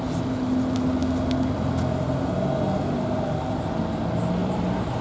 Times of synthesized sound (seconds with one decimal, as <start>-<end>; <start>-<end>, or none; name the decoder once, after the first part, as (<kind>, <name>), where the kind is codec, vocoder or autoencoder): 4.4-5.0 (vocoder, BigVGAN v2)